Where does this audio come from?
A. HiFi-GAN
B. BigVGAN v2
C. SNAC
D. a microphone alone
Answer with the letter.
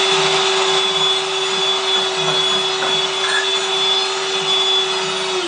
D